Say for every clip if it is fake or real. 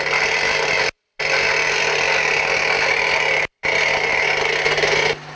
real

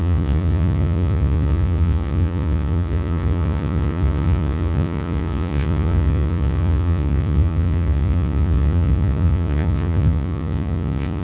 fake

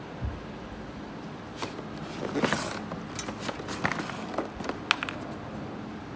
real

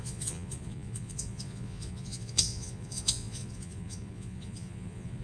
fake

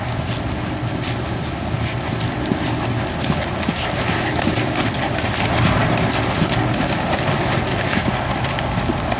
real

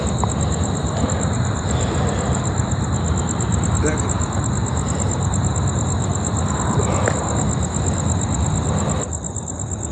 real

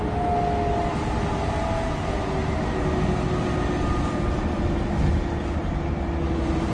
real